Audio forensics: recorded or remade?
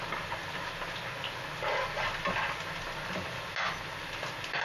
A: recorded